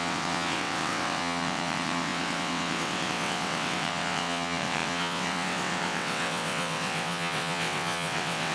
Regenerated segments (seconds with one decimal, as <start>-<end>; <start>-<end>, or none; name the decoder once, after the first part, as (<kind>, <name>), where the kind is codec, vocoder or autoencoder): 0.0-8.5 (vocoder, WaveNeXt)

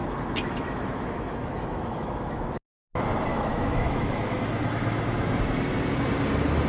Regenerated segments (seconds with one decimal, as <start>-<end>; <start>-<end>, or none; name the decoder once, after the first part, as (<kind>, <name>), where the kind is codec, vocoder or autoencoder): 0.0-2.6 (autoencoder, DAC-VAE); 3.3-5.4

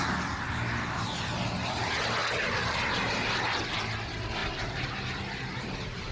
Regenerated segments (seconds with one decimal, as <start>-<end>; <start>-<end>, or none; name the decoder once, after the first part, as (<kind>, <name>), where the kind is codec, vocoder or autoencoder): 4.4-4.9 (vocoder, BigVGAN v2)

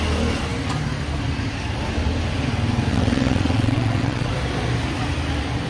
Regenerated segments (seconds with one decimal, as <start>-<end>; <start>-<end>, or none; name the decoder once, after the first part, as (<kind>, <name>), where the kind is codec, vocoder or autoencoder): 2.9-4.3 (vocoder, WaveNeXt)

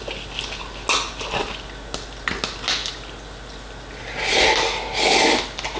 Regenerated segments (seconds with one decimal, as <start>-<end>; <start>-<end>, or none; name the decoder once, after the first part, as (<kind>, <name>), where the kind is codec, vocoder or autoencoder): none